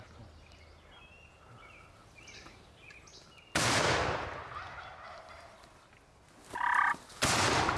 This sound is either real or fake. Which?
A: real